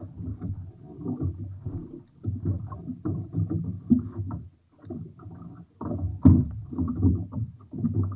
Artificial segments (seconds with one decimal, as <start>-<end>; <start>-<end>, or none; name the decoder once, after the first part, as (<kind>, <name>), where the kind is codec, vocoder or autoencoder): none